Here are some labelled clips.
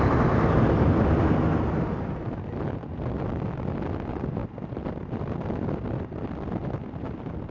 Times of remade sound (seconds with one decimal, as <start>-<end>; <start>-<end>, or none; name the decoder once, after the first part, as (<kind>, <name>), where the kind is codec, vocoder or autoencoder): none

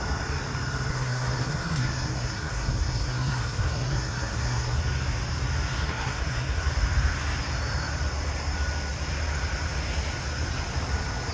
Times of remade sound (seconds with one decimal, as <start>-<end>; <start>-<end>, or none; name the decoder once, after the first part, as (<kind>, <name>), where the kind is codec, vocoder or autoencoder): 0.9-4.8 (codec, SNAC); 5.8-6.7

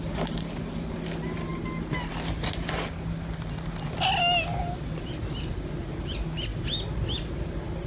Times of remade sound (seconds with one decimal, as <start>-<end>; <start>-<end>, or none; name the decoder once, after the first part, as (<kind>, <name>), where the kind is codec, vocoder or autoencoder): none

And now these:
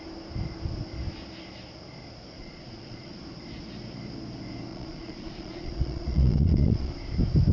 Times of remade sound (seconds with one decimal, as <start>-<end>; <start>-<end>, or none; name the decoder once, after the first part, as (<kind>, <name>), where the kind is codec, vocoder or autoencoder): 2.4-3.2 (vocoder, Vocos); 4.7-6.9

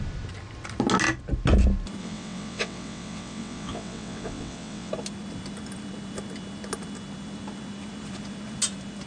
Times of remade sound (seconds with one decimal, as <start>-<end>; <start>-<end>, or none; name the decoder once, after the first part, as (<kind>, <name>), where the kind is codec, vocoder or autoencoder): 2.0-4.9 (vocoder, WaveNeXt)